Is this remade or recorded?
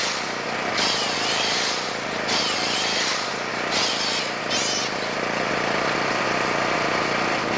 recorded